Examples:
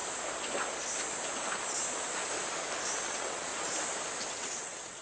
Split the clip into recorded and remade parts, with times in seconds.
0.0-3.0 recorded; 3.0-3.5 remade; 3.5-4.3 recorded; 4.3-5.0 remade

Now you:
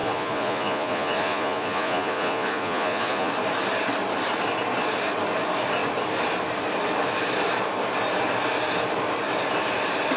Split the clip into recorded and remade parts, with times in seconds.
0.0-3.3 remade; 3.3-10.2 recorded

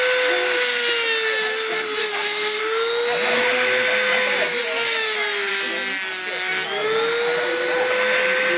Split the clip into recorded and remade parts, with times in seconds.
0.0-2.0 recorded; 2.0-2.6 remade; 2.6-8.6 recorded

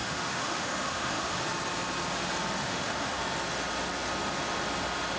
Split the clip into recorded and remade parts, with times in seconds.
0.0-1.4 remade; 1.4-2.6 recorded; 2.6-3.2 remade; 3.2-5.2 recorded

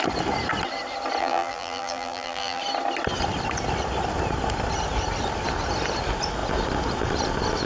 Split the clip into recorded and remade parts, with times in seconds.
0.0-1.2 recorded; 1.2-2.6 remade; 2.6-7.7 recorded

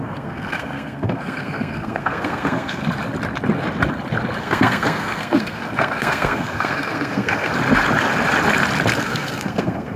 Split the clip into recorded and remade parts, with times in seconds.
0.0-2.8 remade; 2.8-4.4 recorded; 4.4-7.5 remade; 7.5-9.0 recorded; 9.0-10.0 remade

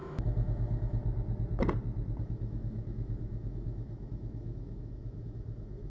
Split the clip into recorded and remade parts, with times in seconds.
0.0-1.0 remade; 1.0-2.2 recorded; 2.2-5.9 remade